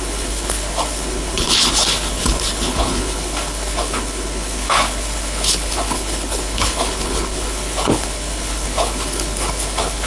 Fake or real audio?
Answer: fake